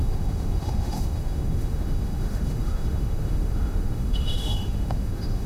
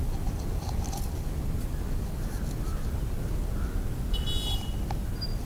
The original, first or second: second